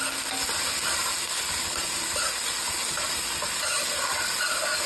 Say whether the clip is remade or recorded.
recorded